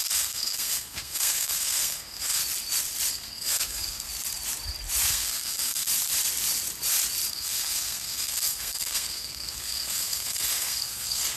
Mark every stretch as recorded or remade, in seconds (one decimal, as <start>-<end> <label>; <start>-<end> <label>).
0.0-2.4 remade; 2.4-3.1 recorded; 3.1-4.1 remade; 4.1-5.1 recorded; 5.1-5.9 remade; 5.9-7.3 recorded; 7.3-11.4 remade